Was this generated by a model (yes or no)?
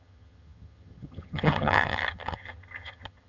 yes